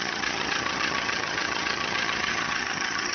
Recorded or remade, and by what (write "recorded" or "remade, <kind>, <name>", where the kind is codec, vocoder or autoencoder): remade, vocoder, HiFi-GAN